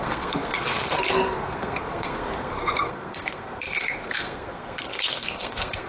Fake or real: fake